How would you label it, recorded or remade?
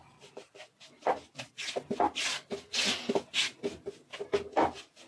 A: recorded